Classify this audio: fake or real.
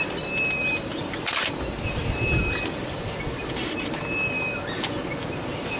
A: real